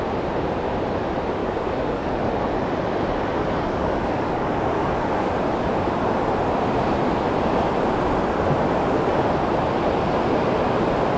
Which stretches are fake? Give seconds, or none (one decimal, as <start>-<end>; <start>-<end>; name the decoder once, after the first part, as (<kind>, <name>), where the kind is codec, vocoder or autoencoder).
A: 1.4-2.3 (codec, DAC); 3.3-5.3